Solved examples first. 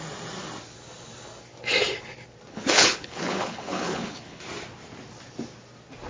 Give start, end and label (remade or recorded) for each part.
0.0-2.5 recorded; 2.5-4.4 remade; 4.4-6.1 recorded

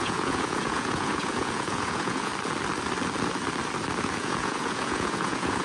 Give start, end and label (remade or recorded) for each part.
0.0-2.3 remade; 2.3-4.0 recorded; 4.0-5.6 remade

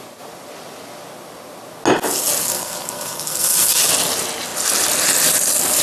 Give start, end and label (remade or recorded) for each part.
0.0-2.4 recorded; 2.4-3.8 remade; 3.8-5.8 recorded

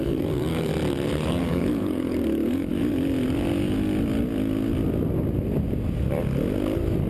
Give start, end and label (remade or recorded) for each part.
0.0-0.7 remade; 0.7-1.4 recorded; 1.4-2.7 remade; 2.7-7.1 recorded

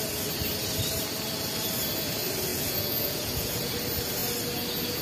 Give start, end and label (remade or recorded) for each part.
0.0-2.5 recorded; 2.5-3.7 remade; 3.7-5.0 recorded

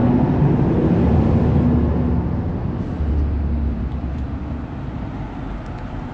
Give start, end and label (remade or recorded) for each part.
0.0-6.1 recorded

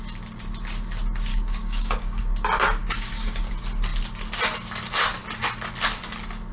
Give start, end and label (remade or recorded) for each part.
0.0-1.3 recorded; 1.3-2.2 remade; 2.2-2.8 recorded; 2.8-3.5 remade; 3.5-6.5 recorded

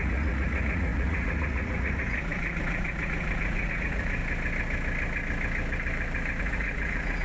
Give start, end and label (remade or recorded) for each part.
0.0-4.2 remade; 4.2-6.4 recorded; 6.4-7.2 remade